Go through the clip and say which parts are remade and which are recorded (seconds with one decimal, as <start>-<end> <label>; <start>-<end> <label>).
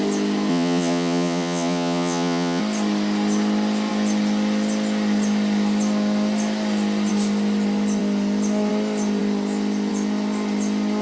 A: 0.0-0.5 recorded; 0.5-2.6 remade; 2.6-11.0 recorded